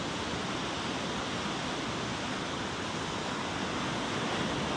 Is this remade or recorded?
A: recorded